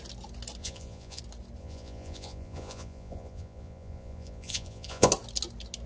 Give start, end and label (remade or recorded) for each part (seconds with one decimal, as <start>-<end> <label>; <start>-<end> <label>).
0.0-0.6 recorded; 0.6-1.2 remade; 1.2-1.6 recorded; 1.6-5.1 remade; 5.1-5.9 recorded

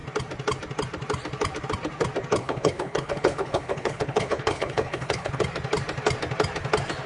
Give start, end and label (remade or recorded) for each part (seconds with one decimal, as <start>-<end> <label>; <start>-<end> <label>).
0.0-2.4 recorded; 2.4-5.4 remade; 5.4-7.1 recorded

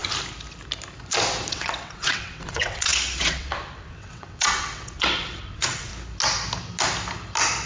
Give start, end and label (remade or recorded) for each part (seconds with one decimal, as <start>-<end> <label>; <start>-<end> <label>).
0.0-1.5 recorded; 1.5-5.9 remade; 5.9-7.7 recorded

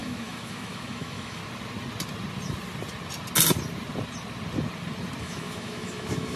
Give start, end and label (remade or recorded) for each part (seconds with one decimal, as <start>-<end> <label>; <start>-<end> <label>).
0.0-1.4 remade; 1.4-5.2 recorded; 5.2-6.4 remade

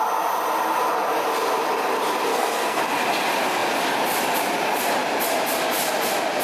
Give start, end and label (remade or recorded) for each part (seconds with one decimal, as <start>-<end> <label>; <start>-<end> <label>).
0.0-2.3 recorded; 2.3-2.8 remade; 2.8-6.4 recorded

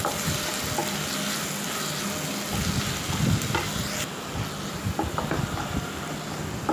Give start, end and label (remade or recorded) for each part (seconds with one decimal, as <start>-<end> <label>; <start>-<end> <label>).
0.0-6.7 recorded

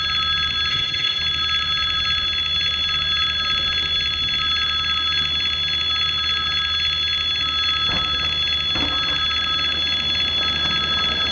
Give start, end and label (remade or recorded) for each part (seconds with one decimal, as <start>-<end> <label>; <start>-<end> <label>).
0.0-0.7 recorded; 0.7-1.2 remade; 1.2-11.3 recorded

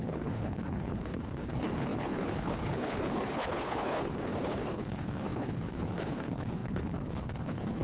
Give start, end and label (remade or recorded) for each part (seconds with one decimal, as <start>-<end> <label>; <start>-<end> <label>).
0.0-7.8 remade